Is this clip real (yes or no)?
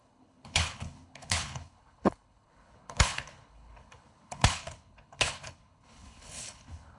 no